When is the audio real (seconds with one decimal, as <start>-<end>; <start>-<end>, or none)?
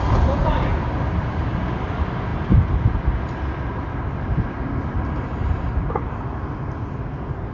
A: 0.0-7.5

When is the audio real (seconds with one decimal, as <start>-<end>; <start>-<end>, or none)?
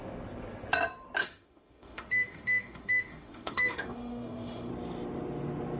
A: 0.0-1.2; 4.7-5.8